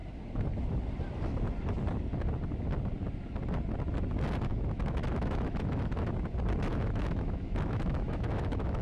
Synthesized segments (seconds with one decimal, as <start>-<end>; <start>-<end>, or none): 4.5-6.1; 6.7-8.8